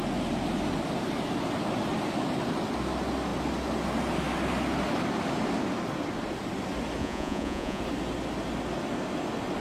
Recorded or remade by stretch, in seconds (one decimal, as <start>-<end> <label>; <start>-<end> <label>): 0.0-7.0 recorded; 7.0-7.8 remade; 7.8-9.6 recorded